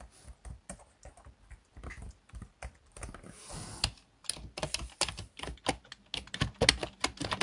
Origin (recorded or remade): recorded